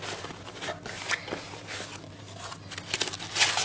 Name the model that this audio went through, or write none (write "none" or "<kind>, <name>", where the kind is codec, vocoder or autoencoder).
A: none